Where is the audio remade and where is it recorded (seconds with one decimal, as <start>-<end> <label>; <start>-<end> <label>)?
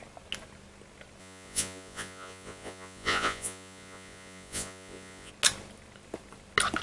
0.0-1.2 recorded; 1.2-5.3 remade; 5.3-6.8 recorded